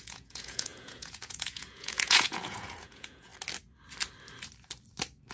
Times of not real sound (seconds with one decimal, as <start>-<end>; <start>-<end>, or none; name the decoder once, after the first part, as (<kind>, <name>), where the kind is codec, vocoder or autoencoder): 0.0-3.3 (vocoder, Vocos)